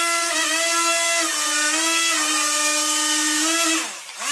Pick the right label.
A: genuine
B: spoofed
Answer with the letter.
A